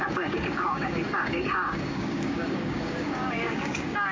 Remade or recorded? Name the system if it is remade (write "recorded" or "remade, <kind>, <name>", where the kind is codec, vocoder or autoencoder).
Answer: remade, codec, DAC